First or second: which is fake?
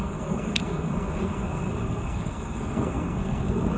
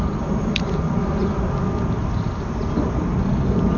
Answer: first